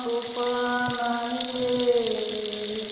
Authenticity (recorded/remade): recorded